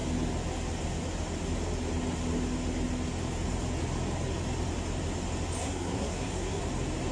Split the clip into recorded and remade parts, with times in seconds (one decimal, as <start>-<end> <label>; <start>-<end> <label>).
0.0-5.6 recorded; 5.6-6.6 remade; 6.6-7.1 recorded